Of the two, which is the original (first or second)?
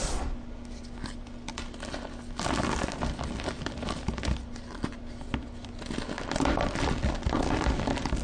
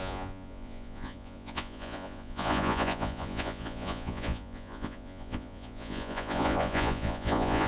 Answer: first